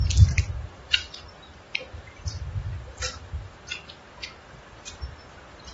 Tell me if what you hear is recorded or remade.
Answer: recorded